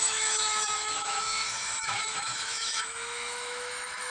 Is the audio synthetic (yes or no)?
yes